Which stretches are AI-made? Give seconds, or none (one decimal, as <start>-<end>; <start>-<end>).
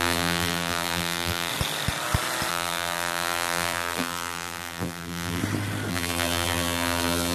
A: 0.0-1.5; 2.5-5.4; 5.9-7.3